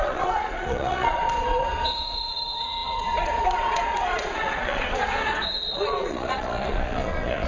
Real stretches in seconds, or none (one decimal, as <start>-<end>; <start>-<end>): none